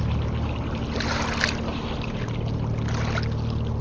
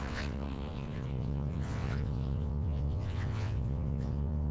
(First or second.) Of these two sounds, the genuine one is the first